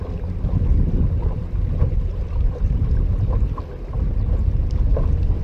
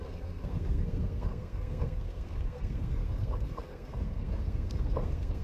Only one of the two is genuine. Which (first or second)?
first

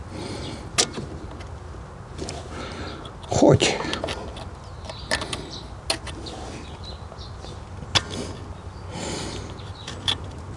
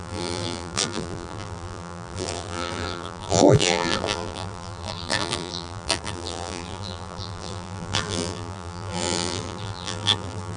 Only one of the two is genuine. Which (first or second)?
first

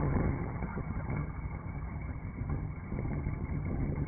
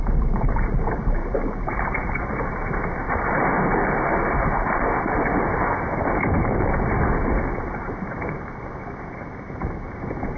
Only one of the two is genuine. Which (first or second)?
second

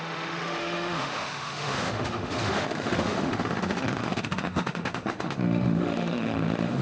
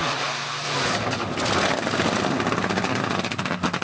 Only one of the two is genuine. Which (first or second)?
second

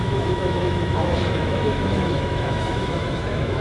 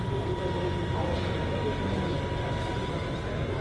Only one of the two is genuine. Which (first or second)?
second